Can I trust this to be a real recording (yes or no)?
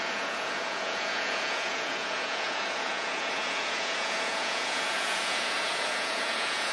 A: no